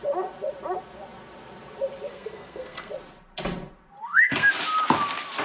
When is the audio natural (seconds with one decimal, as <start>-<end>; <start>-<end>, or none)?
0.0-2.1; 2.9-4.0; 4.5-5.4